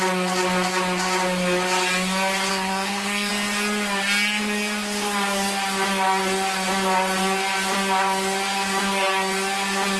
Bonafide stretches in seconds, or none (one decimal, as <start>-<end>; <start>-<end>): 0.0-2.5; 3.3-10.0